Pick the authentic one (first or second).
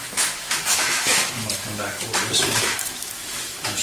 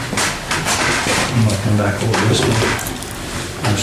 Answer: second